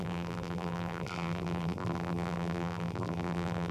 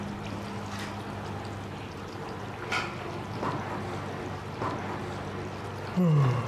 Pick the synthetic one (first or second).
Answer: first